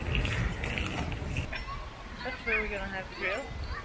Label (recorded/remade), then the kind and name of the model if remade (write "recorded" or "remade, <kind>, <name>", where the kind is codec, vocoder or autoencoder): recorded